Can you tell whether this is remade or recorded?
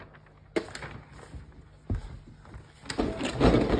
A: recorded